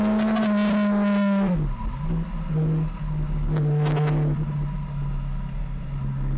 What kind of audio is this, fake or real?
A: real